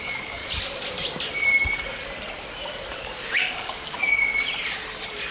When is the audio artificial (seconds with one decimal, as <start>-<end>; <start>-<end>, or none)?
0.0-0.4; 3.0-4.3